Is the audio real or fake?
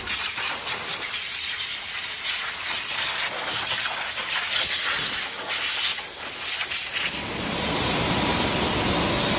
real